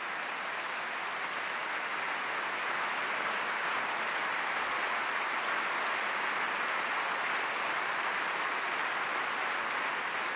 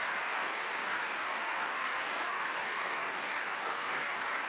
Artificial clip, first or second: second